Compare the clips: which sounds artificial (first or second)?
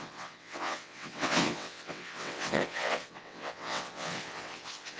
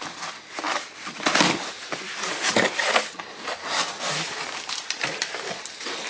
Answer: first